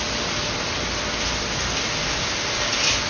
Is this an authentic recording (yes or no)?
yes